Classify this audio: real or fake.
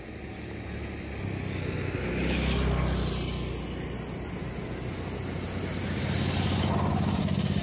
real